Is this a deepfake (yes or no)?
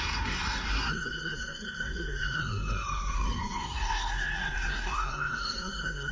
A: yes